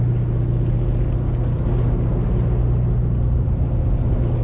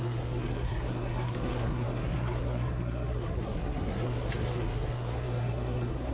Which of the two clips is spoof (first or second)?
second